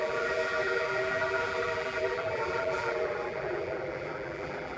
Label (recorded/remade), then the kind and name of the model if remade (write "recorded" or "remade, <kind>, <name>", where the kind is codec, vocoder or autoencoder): remade, vocoder, BigVGAN v2